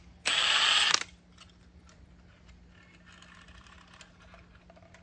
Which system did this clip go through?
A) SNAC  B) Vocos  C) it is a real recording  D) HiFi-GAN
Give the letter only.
C